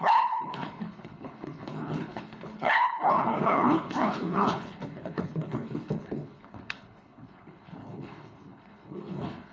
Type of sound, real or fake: fake